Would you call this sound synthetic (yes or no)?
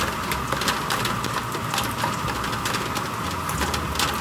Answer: no